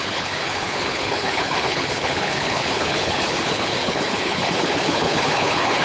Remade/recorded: remade